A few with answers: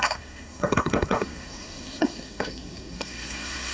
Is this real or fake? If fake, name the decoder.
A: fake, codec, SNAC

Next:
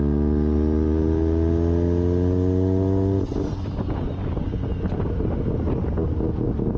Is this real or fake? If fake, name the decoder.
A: real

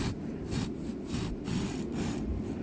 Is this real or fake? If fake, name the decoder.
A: real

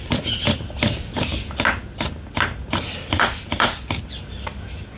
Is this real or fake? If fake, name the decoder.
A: real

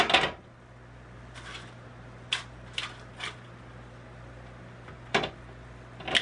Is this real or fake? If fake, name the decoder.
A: real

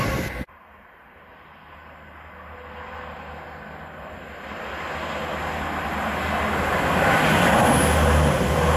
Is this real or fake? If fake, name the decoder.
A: real